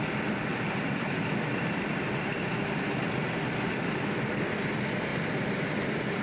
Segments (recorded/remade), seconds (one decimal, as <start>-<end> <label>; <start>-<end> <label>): 0.0-0.5 recorded; 0.5-3.4 remade; 3.4-5.1 recorded; 5.1-6.2 remade